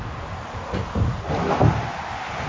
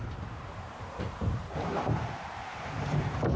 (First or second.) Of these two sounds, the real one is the first